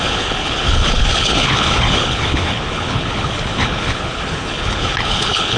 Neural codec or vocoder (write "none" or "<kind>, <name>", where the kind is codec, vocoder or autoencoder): codec, HILCodec